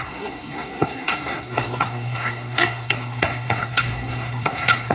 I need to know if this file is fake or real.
fake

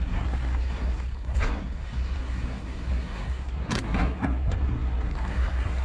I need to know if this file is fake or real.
fake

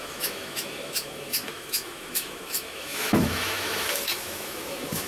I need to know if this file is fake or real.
fake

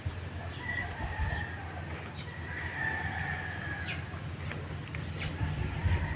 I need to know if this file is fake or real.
real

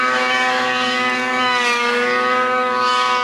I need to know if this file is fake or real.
fake